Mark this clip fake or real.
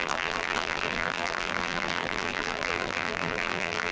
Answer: fake